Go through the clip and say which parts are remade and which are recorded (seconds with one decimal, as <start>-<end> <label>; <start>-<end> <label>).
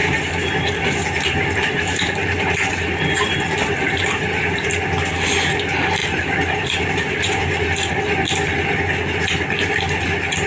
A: 0.0-4.7 remade; 4.7-6.0 recorded; 6.0-7.9 remade; 7.9-10.5 recorded